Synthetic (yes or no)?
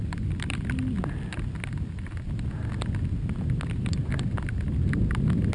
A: no